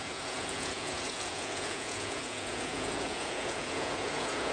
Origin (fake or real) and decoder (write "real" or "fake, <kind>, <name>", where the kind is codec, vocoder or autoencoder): fake, vocoder, Vocos